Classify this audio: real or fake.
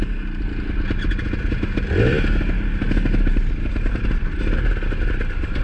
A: real